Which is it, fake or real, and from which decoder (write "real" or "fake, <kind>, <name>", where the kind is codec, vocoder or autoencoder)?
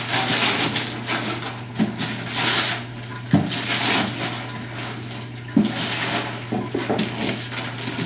real